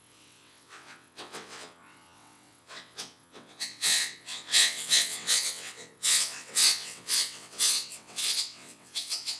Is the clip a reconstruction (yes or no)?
yes